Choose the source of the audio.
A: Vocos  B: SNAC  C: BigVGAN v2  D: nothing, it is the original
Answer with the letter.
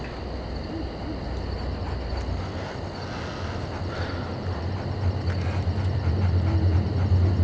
D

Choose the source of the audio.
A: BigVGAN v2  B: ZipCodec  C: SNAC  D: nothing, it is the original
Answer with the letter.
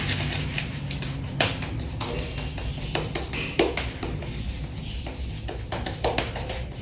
D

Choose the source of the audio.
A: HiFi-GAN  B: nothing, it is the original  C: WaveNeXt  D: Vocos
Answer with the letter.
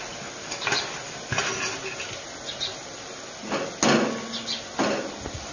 B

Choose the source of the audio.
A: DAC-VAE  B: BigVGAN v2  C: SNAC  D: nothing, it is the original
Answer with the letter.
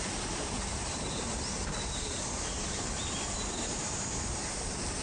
B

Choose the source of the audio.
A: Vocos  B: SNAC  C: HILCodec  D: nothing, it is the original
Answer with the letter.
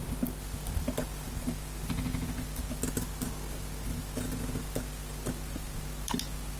D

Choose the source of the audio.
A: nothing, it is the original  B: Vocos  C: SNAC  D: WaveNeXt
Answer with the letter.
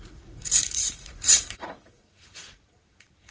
B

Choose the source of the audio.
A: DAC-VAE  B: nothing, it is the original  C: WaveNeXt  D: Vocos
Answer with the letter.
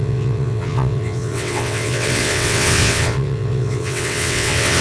C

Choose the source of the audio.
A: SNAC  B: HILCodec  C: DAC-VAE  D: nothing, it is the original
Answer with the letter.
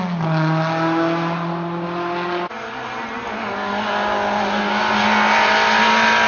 D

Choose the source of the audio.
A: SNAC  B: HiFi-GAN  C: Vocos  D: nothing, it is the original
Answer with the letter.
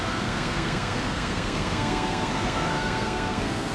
A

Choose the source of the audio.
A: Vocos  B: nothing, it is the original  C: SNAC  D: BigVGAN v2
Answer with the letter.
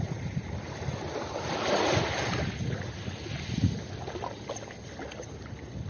B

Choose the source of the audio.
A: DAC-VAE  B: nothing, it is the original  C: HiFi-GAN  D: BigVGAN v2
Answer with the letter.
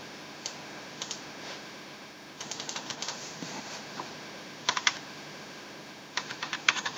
A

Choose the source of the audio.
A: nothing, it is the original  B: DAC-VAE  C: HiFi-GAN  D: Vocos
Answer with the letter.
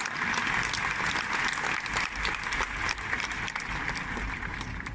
A